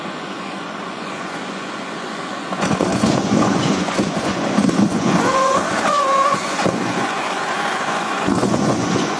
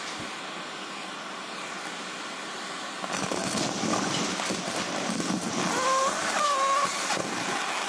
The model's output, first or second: first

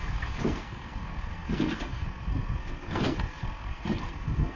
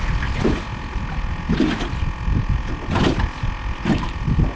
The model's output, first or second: first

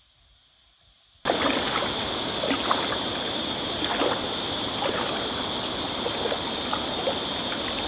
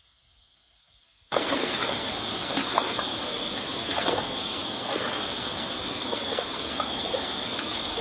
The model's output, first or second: second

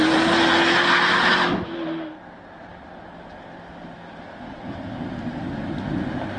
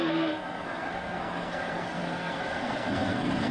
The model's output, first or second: second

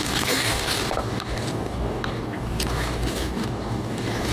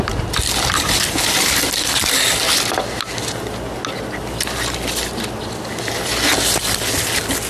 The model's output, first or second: first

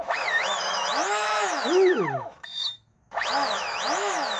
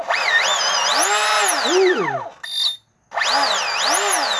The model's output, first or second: first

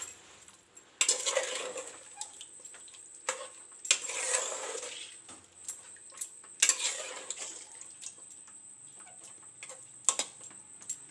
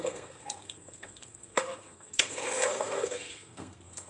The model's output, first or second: second